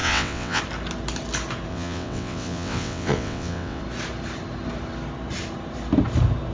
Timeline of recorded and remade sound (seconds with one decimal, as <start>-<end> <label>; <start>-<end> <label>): 0.0-0.6 remade; 0.6-1.7 recorded; 1.7-3.8 remade; 3.8-6.5 recorded

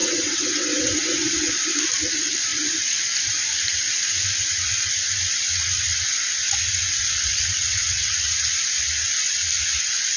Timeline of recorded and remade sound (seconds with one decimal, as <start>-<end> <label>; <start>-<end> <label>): 0.0-1.5 remade; 1.5-6.9 recorded; 6.9-8.1 remade; 8.1-10.2 recorded

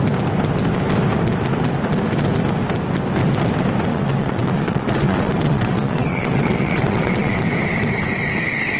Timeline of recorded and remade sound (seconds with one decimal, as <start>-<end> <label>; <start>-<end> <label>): 0.0-3.9 recorded; 3.9-7.4 remade; 7.4-8.8 recorded